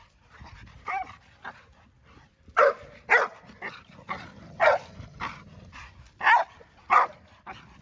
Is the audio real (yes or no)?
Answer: yes